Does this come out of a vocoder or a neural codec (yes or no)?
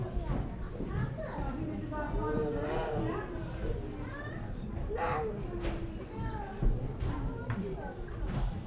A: no